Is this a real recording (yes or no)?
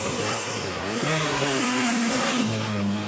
no